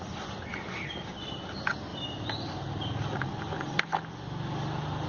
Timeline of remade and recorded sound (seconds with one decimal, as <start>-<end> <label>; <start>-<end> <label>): 0.0-5.1 recorded